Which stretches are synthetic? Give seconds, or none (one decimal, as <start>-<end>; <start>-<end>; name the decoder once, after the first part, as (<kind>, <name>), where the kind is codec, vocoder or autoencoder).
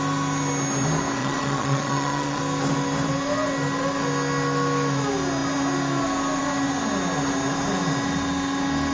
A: 1.2-2.4 (vocoder, Vocos)